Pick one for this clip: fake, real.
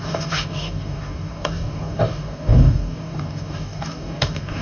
fake